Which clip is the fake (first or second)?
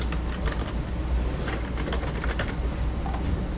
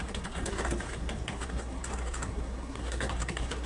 second